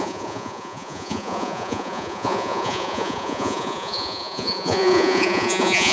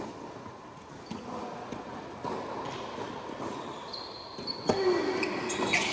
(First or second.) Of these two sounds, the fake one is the first